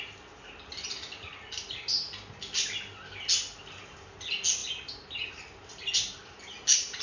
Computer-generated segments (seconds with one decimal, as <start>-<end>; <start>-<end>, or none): none